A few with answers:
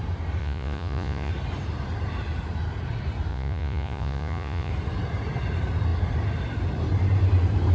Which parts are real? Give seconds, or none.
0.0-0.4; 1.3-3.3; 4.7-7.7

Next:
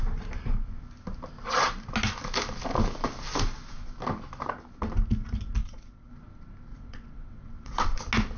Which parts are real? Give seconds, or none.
0.0-5.6; 6.1-6.7; 8.0-8.4

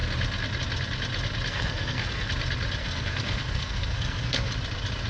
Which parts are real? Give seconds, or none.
0.0-1.5; 2.3-2.8; 4.5-5.1

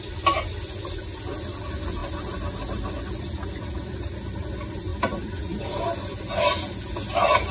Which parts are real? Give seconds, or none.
0.0-7.5

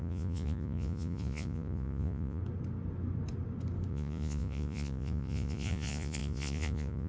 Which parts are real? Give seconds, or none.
2.4-3.9

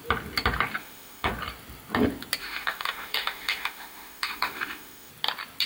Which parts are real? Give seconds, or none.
0.0-0.8; 1.3-2.4; 5.1-5.7

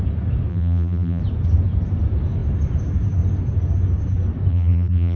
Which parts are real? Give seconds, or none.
0.0-0.5; 1.2-4.5